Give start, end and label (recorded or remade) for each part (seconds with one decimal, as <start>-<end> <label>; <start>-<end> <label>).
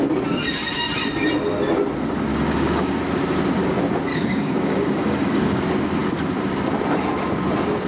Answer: 0.0-2.3 recorded; 2.3-3.0 remade; 3.0-4.1 recorded; 4.1-5.6 remade; 5.6-7.9 recorded